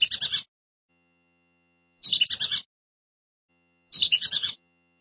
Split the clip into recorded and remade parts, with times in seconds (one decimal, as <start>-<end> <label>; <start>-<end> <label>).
0.0-0.9 recorded; 0.9-2.2 remade; 2.2-3.5 recorded; 3.5-5.0 remade